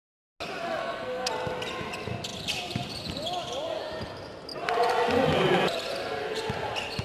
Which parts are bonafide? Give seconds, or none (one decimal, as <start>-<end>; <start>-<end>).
0.0-0.8; 1.3-7.0